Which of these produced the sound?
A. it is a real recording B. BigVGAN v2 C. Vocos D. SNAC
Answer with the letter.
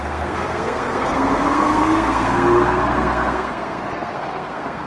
D